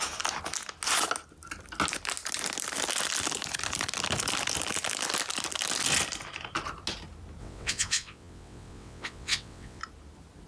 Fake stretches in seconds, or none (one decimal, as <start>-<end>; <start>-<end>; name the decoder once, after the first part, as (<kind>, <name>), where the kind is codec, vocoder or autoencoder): 7.4-9.8 (vocoder, WaveNeXt)